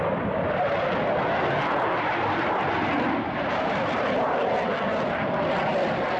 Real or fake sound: real